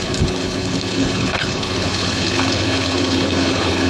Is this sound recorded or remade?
remade